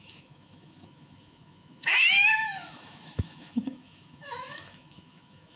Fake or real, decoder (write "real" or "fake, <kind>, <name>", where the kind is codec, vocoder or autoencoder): fake, autoencoder, DAC-VAE